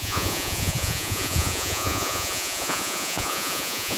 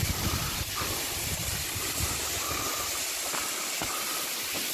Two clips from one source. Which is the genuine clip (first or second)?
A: second